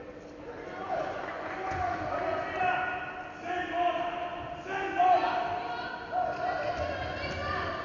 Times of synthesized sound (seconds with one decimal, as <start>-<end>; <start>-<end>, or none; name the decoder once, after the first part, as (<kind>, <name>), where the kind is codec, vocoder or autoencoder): 0.8-2.6 (vocoder, Vocos)